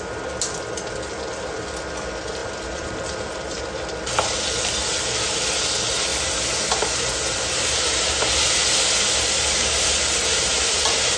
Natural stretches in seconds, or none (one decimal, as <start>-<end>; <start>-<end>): 0.0-2.4; 3.6-6.1; 8.1-10.3